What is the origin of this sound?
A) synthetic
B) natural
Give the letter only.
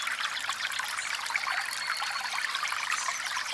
B